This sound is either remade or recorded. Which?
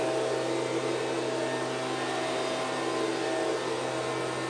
recorded